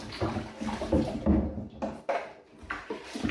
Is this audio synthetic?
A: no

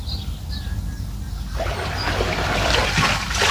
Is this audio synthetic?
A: no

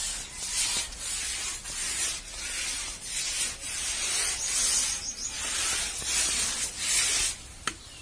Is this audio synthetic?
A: no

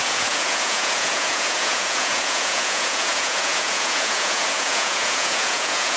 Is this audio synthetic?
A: yes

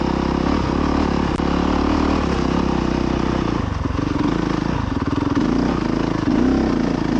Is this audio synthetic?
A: no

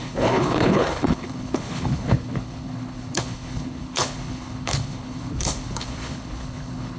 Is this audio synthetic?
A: yes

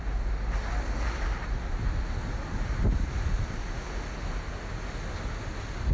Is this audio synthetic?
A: no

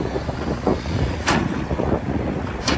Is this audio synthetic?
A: yes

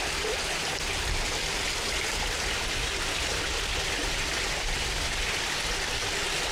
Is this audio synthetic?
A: no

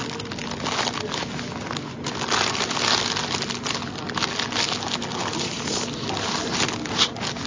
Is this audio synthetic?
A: no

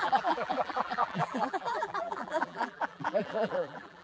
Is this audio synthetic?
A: yes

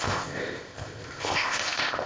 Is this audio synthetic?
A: yes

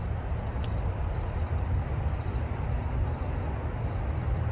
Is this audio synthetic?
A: no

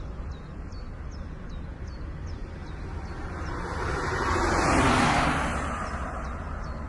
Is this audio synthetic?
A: no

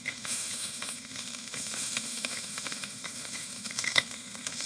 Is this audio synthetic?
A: yes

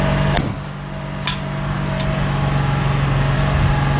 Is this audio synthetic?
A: no